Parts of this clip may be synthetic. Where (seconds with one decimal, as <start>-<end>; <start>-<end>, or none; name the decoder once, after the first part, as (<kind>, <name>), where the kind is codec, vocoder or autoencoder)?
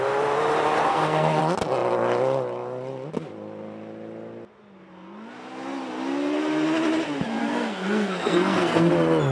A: 0.8-1.4 (codec, SNAC); 7.4-8.9